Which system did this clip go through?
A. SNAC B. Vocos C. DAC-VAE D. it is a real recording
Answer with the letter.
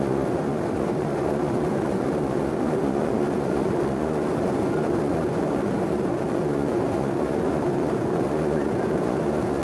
B